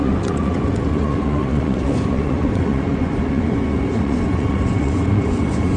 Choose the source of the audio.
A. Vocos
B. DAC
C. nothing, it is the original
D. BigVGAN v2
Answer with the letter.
A